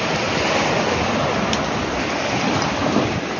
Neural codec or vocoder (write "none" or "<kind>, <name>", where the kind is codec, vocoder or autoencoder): none